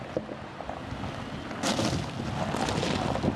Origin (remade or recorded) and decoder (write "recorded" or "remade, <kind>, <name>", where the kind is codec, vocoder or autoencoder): recorded